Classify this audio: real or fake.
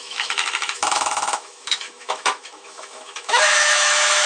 fake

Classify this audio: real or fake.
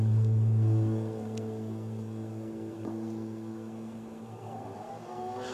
fake